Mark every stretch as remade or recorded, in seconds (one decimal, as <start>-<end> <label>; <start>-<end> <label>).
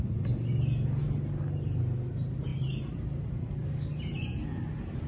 0.0-5.1 recorded